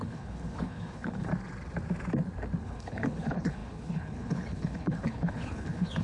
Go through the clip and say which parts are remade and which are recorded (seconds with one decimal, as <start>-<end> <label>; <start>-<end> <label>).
0.0-1.3 remade; 1.3-2.6 recorded; 2.6-6.0 remade